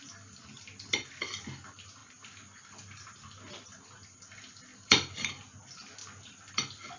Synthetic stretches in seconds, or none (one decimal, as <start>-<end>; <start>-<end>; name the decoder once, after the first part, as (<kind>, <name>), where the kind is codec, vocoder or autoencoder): 2.0-2.7 (vocoder, BigVGAN v2); 4.7-5.4